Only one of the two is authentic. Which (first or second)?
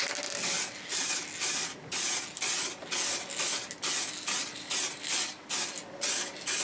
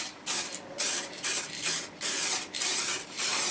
first